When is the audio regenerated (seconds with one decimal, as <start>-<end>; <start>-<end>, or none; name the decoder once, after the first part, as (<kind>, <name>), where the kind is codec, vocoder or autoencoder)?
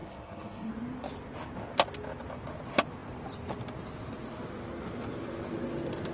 0.0-0.7 (codec, SNAC)